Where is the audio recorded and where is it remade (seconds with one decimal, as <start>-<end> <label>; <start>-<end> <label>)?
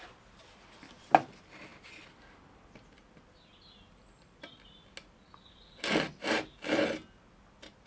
0.0-7.9 recorded